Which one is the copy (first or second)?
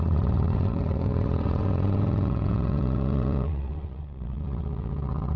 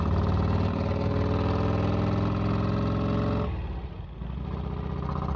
first